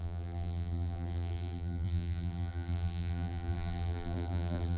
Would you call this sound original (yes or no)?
no